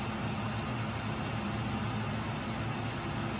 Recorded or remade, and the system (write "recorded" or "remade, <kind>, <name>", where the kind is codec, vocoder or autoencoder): recorded